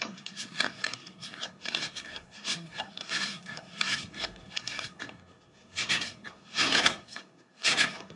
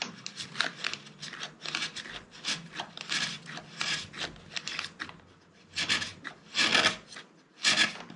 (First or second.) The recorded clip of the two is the second